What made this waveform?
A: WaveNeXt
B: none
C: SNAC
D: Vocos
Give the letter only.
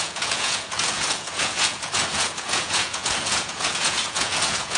D